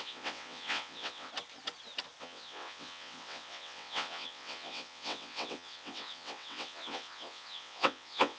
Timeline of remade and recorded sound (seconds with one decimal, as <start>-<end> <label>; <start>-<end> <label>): 0.0-1.3 remade; 1.3-2.2 recorded; 2.2-8.4 remade